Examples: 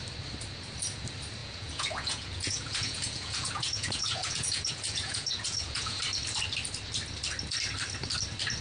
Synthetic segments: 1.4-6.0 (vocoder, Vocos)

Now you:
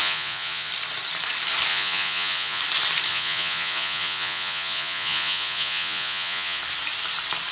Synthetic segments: 0.0-0.7 (vocoder, Vocos); 1.7-2.6; 3.1-6.6

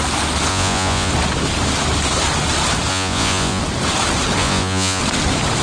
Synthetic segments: 0.5-1.1 (vocoder, Vocos); 2.9-3.6; 4.4-5.0

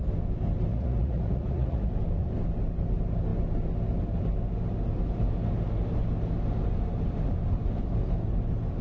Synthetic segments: 0.7-1.9 (vocoder, Vocos)